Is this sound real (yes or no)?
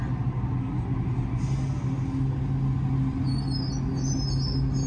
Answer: yes